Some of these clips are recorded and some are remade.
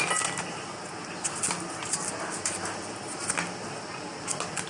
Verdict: recorded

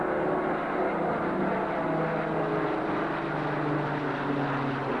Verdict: recorded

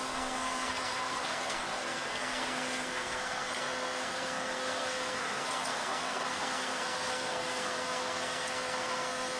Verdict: remade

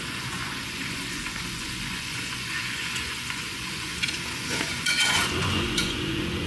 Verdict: remade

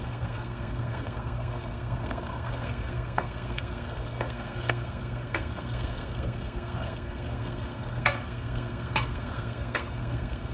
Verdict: remade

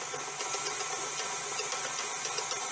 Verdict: recorded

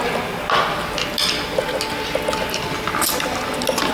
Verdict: recorded